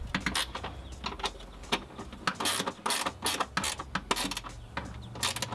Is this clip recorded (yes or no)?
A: yes